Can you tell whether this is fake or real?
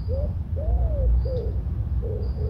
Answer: real